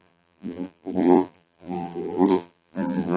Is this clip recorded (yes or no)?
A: no